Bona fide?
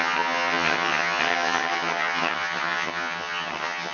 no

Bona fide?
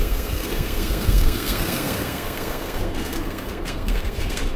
no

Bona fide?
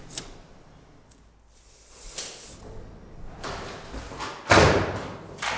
yes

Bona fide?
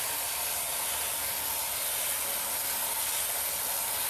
yes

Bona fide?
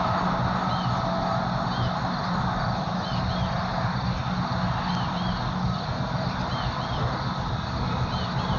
yes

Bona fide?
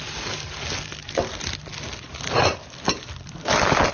yes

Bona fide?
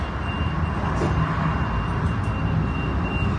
yes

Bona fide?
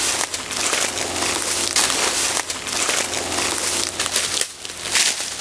yes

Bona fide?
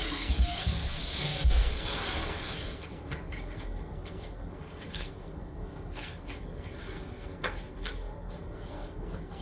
no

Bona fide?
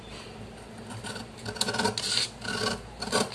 yes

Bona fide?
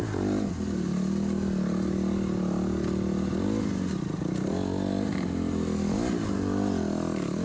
yes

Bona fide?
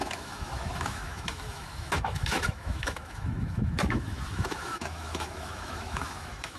no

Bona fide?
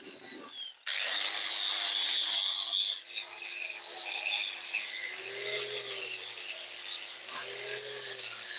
yes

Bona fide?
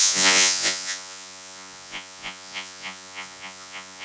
no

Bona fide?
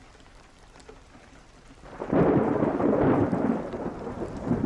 no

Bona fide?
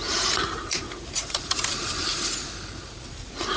no